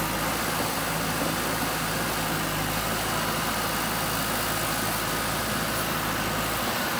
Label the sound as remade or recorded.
recorded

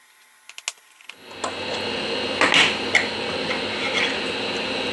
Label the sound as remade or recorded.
recorded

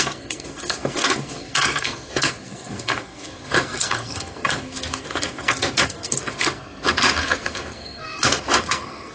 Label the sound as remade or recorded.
remade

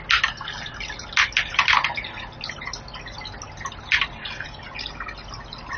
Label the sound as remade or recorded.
recorded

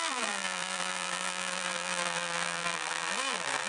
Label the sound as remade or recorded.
remade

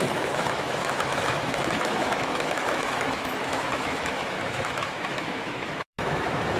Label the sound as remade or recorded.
remade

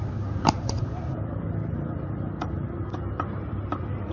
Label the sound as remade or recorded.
recorded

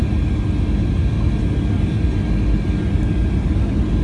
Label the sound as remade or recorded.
recorded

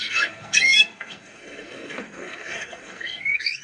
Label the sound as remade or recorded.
remade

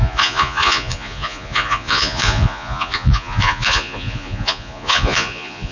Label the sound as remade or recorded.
remade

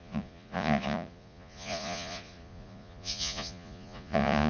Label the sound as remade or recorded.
remade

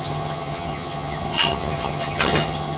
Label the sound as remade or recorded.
remade